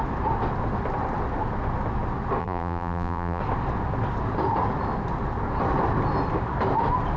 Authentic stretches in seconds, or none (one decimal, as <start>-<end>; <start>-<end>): 0.0-2.4; 3.4-7.2